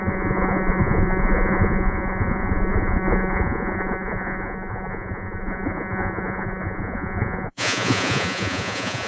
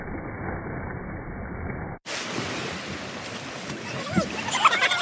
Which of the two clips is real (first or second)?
second